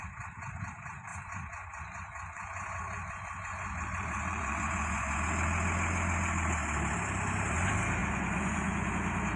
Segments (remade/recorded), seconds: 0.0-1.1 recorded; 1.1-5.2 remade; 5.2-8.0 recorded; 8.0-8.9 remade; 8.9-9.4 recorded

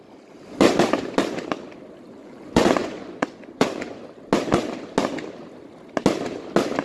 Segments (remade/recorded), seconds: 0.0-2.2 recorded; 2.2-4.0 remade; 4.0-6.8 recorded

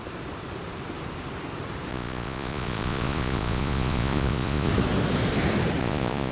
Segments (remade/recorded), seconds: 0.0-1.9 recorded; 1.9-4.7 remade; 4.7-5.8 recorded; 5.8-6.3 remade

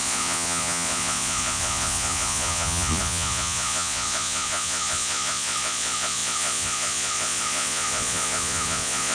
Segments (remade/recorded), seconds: 0.0-9.1 remade

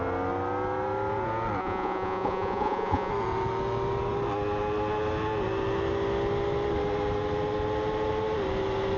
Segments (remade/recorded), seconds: 0.0-1.6 recorded; 1.6-3.1 remade; 3.1-9.0 recorded

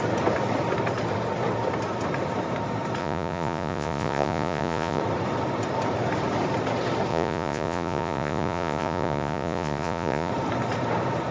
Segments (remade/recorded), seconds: 0.0-3.0 recorded; 3.0-5.0 remade; 5.0-7.1 recorded; 7.1-10.3 remade; 10.3-11.3 recorded

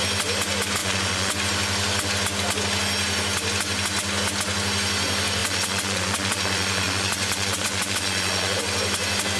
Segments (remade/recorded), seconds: 0.0-0.8 recorded; 0.8-1.3 remade; 1.3-5.4 recorded; 5.4-8.6 remade; 8.6-9.4 recorded

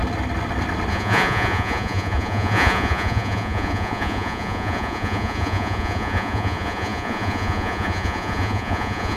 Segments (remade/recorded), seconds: 0.0-0.9 recorded; 0.9-9.2 remade